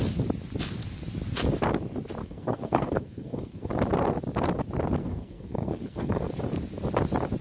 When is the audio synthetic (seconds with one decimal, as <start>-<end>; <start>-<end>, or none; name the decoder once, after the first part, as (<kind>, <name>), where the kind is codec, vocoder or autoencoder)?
2.2-3.7 (codec, SNAC); 5.0-6.3